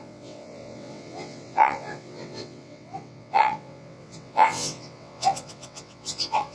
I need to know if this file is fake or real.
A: fake